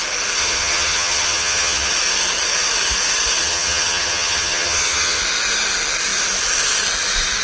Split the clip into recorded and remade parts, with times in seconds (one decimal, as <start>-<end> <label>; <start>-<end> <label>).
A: 0.0-0.4 recorded; 0.4-1.9 remade; 1.9-3.4 recorded; 3.4-5.2 remade; 5.2-7.4 recorded